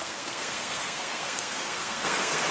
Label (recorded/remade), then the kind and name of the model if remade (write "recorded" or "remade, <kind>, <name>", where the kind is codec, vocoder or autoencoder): remade, codec, SNAC